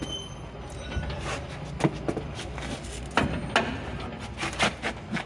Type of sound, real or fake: real